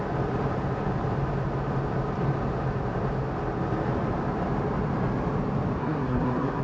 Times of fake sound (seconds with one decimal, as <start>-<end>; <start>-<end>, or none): 5.8-6.6